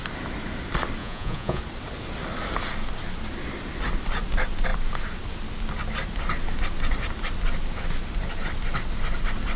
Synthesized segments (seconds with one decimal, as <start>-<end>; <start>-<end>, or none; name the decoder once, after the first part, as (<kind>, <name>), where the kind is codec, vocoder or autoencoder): 1.0-1.6 (vocoder, Vocos)